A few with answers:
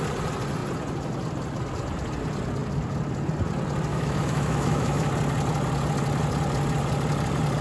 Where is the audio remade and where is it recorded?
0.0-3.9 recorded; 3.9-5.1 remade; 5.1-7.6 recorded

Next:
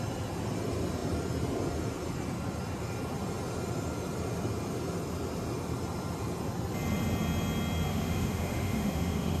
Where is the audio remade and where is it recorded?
0.0-7.9 recorded; 7.9-9.4 remade

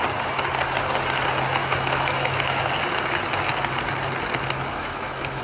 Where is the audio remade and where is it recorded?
0.0-1.6 recorded; 1.6-2.6 remade; 2.6-4.7 recorded; 4.7-5.4 remade

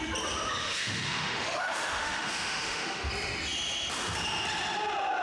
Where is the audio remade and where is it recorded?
0.0-0.6 recorded; 0.6-3.1 remade; 3.1-5.2 recorded

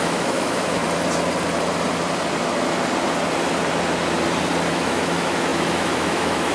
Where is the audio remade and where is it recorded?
0.0-0.8 remade; 0.8-4.7 recorded; 4.7-6.5 remade